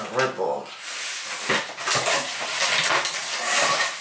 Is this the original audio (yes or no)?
yes